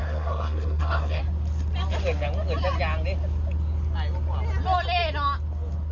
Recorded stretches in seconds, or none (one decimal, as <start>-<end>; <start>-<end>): 1.2-5.9